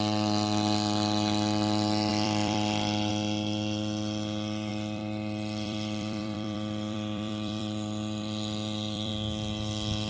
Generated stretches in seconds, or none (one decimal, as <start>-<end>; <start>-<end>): 2.1-3.1; 4.7-9.1